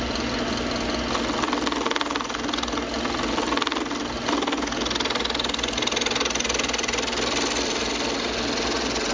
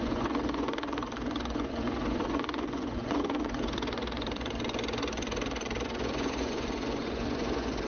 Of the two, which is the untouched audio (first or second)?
first